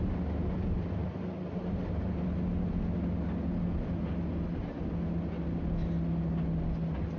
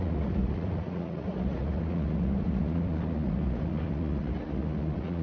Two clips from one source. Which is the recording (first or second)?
first